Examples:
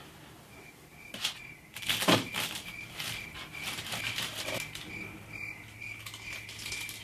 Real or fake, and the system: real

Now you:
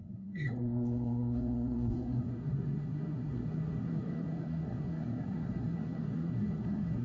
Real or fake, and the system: fake, codec, SNAC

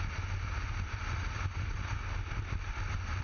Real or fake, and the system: real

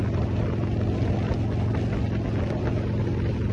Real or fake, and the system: real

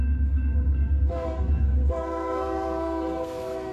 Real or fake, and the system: fake, codec, SNAC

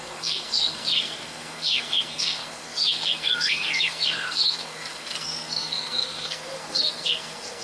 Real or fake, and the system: fake, codec, SNAC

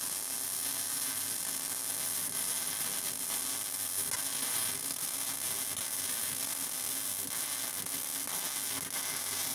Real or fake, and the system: real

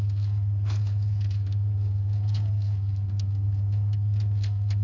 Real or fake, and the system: fake, codec, SNAC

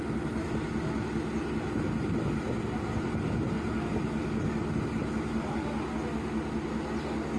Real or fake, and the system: real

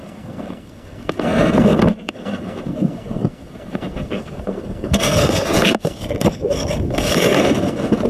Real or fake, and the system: fake, codec, SNAC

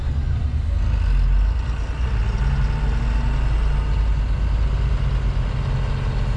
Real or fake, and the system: real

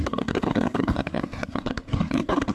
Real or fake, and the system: fake, codec, SNAC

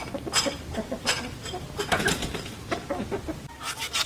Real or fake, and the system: real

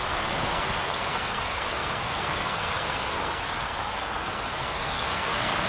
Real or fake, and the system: fake, codec, SNAC